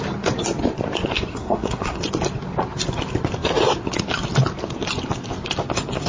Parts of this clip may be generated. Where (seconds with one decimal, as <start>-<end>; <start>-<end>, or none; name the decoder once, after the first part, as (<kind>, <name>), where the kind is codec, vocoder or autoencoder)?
1.3-2.0 (codec, SNAC)